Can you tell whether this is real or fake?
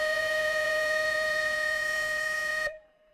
fake